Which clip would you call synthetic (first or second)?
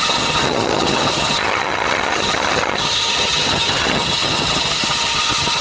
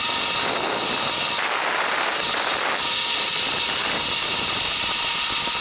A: first